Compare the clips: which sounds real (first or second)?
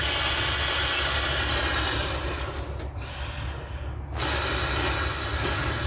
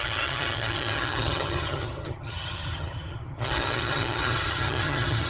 first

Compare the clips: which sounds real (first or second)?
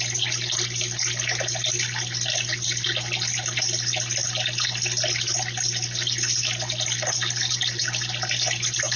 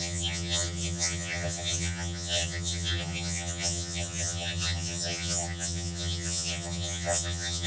first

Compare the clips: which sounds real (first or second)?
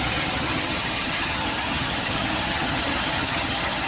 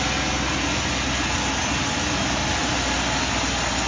second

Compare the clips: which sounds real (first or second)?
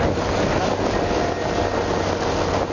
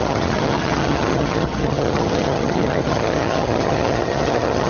first